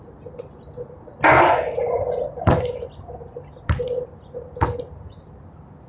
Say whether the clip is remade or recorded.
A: recorded